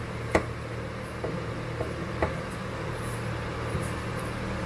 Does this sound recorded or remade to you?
recorded